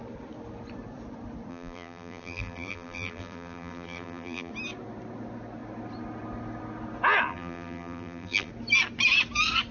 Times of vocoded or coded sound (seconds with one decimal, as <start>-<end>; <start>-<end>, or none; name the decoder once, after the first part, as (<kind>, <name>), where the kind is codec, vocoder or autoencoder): 1.5-4.5 (vocoder, BigVGAN v2); 7.3-8.5